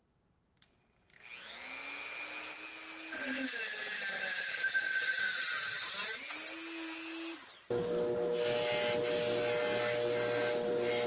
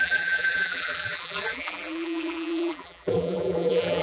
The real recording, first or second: first